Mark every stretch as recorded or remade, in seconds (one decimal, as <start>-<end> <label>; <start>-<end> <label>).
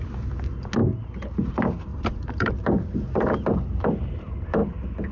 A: 0.0-1.9 recorded; 1.9-2.5 remade; 2.5-5.1 recorded